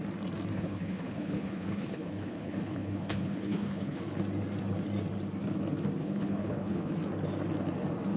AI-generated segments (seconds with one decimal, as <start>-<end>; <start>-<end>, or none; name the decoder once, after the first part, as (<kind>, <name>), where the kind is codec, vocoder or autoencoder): 0.5-4.0 (codec, HILCodec); 6.0-6.9